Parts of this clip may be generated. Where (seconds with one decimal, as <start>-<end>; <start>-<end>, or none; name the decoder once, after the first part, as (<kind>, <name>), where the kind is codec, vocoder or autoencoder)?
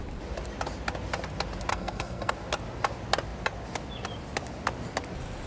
1.7-2.3 (codec, SNAC)